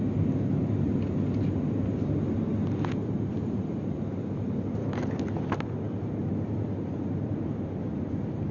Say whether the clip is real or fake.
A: real